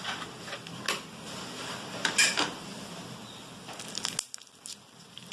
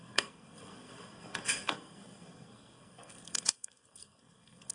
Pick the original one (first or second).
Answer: first